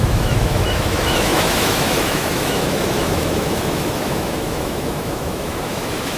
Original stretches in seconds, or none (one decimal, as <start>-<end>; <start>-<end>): none

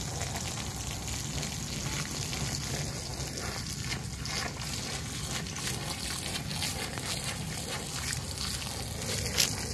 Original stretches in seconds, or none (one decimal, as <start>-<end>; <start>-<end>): 0.0-9.7

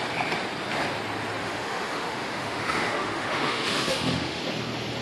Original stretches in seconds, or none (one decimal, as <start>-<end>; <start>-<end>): 0.0-1.4; 4.4-5.0

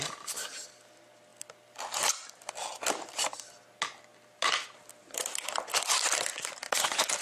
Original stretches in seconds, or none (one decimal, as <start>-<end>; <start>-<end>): 0.0-7.2

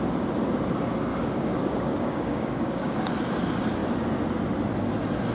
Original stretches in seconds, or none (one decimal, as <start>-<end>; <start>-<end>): 0.0-1.1; 3.1-5.3

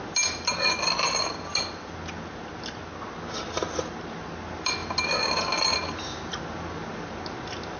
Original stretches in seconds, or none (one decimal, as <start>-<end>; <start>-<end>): 0.0-7.8

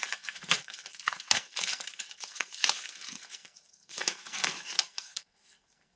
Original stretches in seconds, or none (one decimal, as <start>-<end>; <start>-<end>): none

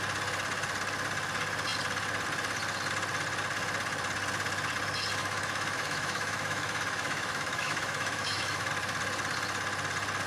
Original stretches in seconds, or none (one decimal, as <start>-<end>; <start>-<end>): 0.0-5.2; 8.7-10.3